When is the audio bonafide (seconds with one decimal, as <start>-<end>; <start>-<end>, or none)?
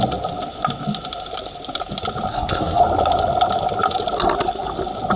0.0-2.3; 2.8-5.2